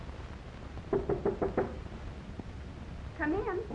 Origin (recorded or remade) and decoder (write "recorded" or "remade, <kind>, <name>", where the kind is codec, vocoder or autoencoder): recorded